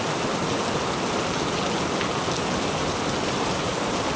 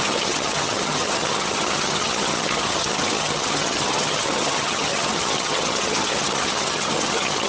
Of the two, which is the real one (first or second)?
first